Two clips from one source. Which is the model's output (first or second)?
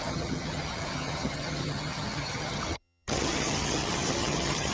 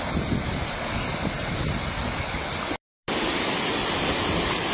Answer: first